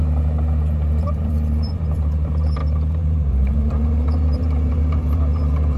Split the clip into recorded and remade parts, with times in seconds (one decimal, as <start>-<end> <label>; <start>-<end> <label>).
0.0-1.0 recorded; 1.0-5.8 remade